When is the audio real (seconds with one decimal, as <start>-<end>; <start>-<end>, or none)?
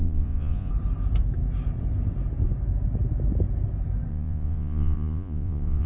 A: 0.7-4.1